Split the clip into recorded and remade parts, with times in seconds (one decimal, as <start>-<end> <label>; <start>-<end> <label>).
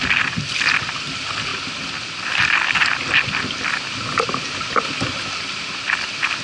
0.0-6.4 recorded